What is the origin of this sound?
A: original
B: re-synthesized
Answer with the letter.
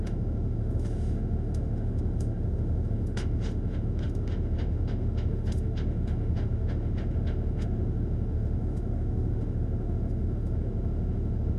B